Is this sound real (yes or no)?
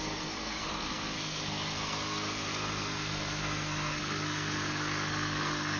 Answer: no